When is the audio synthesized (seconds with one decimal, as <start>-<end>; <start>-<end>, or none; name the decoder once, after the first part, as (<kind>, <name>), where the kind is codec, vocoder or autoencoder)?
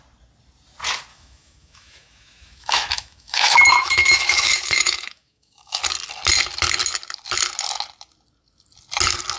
1.1-5.8 (autoencoder, DAC-VAE)